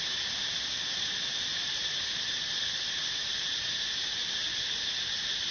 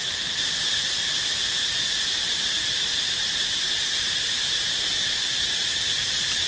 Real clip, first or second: first